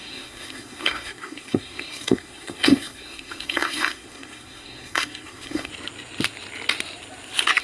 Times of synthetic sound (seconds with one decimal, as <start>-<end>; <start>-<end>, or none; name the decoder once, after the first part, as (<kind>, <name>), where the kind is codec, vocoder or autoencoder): 0.0-5.7 (codec, SNAC)